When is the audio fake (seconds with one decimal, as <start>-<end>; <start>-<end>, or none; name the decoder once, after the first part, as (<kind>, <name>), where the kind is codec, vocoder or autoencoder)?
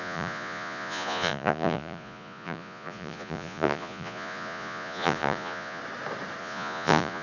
0.0-5.8 (vocoder, Vocos); 6.4-7.2